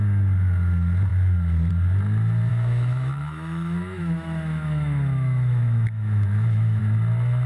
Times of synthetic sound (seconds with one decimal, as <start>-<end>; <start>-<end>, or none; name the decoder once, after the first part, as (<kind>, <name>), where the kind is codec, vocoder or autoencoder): 2.5-6.8 (autoencoder, DAC-VAE)